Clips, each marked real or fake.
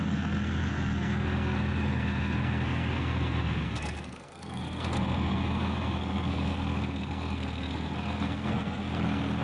fake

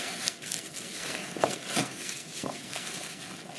fake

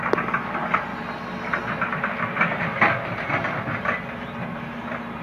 real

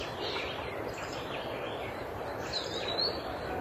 fake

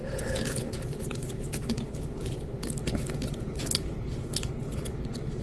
fake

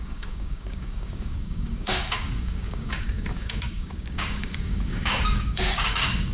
fake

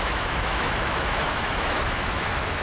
fake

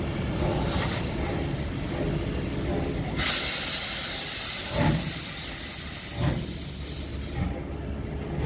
real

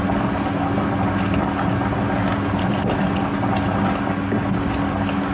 real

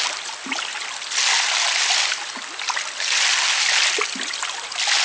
real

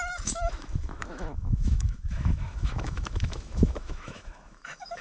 fake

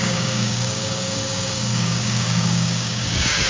fake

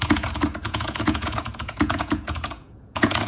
fake